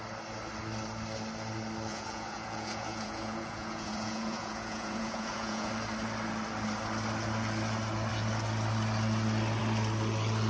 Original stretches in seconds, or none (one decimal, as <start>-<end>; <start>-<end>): 0.0-1.9; 5.7-10.5